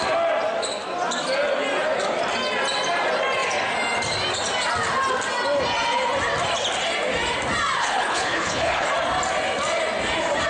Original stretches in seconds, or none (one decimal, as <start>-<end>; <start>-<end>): 0.0-7.8; 8.9-10.5